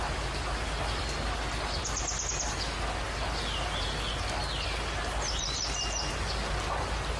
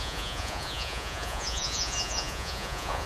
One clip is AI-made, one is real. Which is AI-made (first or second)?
second